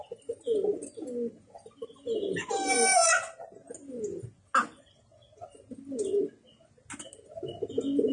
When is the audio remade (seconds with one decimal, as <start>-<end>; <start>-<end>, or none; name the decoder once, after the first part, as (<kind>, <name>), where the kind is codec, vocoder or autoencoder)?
none